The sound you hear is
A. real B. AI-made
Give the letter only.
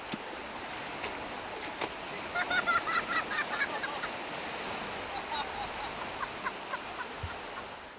A